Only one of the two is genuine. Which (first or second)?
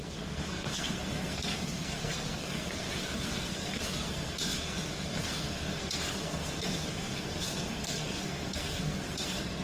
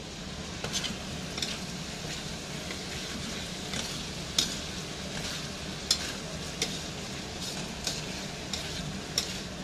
second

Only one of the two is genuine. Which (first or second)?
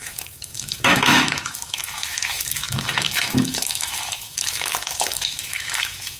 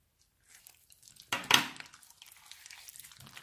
second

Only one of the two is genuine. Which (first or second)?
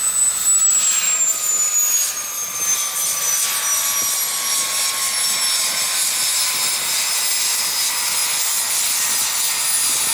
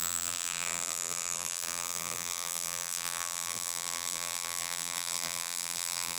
first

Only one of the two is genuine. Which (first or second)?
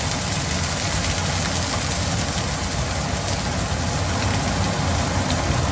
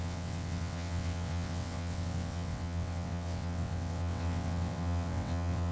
first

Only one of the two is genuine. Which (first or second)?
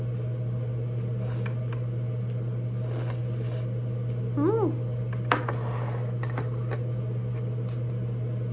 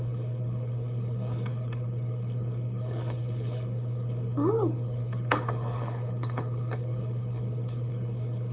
first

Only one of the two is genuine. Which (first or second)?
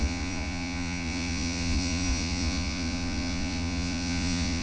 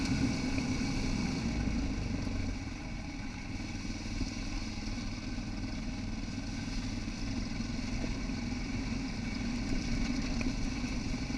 second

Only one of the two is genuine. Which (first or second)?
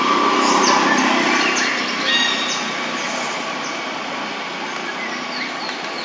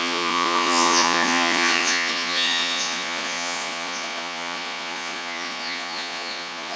first